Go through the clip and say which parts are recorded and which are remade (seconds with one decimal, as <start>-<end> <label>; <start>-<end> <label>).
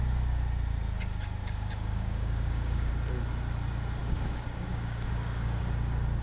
0.0-1.4 recorded; 1.4-2.9 remade; 2.9-4.0 recorded; 4.0-5.6 remade; 5.6-6.2 recorded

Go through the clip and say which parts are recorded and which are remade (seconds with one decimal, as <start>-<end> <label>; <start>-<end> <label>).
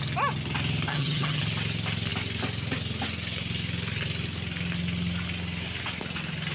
0.0-0.9 recorded; 0.9-1.4 remade; 1.4-6.5 recorded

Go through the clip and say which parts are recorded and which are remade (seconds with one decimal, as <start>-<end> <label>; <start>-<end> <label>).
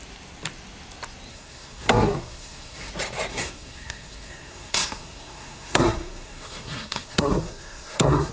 0.0-1.3 recorded; 1.3-2.9 remade; 2.9-3.3 recorded; 3.3-8.3 remade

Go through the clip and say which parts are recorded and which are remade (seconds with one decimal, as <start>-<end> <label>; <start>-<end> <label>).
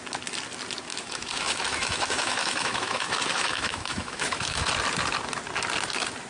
0.0-0.9 recorded; 0.9-4.7 remade; 4.7-6.3 recorded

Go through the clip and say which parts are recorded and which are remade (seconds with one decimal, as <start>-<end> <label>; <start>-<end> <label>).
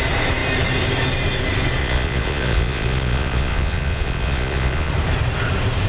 0.0-1.8 recorded; 1.8-4.9 remade; 4.9-5.9 recorded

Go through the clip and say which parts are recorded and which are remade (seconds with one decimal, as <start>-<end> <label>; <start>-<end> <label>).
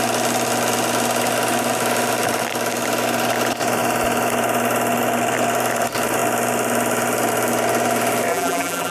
0.0-8.3 recorded; 8.3-8.9 remade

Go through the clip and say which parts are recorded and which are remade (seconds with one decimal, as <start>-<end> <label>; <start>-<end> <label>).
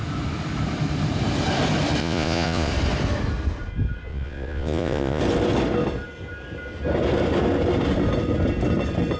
0.0-2.0 recorded; 2.0-2.7 remade; 2.7-4.1 recorded; 4.1-5.2 remade; 5.2-9.2 recorded